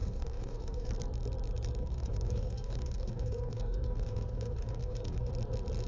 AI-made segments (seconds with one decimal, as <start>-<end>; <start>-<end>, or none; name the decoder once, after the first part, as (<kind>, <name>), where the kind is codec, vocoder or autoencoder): 0.0-0.9 (codec, DAC); 1.8-5.3